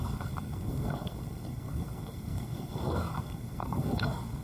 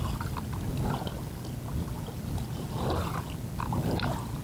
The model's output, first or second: first